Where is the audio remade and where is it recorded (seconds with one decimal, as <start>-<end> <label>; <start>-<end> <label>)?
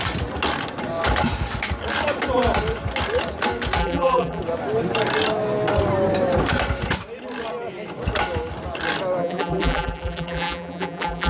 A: 0.0-3.8 recorded; 3.8-4.4 remade; 4.4-9.2 recorded; 9.2-11.3 remade